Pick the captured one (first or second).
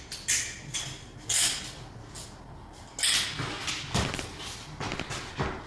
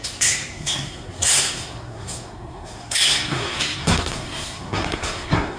first